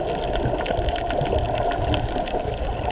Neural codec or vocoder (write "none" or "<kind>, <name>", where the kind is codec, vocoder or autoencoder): none